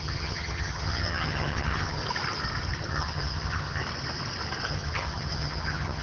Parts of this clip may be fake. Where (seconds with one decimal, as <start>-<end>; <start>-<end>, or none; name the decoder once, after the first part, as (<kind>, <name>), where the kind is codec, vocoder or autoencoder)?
0.0-2.0 (vocoder, HiFi-GAN); 2.9-3.8; 4.7-6.0